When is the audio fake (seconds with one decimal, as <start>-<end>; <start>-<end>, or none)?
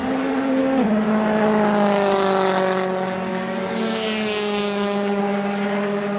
0.0-0.6; 3.3-5.2